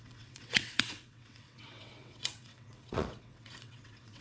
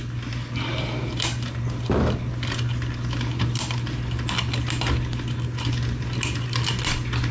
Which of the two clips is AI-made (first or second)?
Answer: first